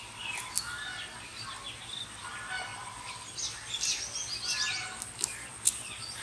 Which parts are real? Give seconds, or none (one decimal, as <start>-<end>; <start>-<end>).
0.0-6.2